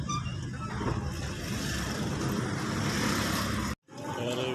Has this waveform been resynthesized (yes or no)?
no